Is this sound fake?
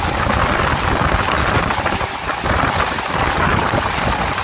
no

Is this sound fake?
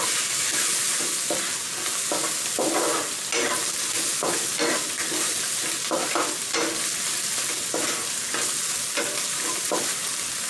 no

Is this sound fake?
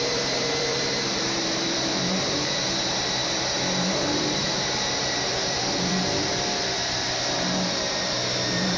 yes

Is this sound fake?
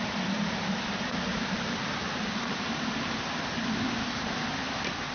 no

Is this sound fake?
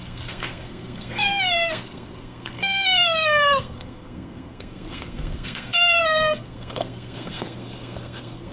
yes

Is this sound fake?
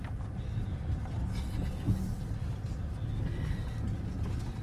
no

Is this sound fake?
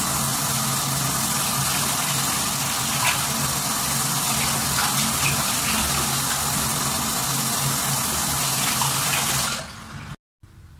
no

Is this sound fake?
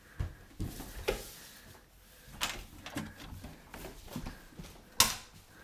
no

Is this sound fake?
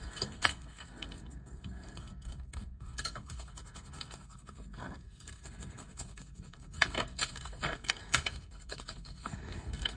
yes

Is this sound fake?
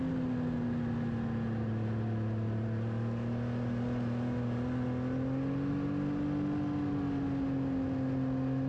no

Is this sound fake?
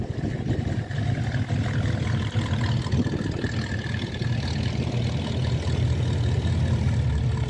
no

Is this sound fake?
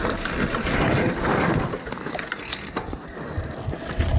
no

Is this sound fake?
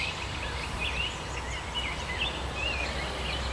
no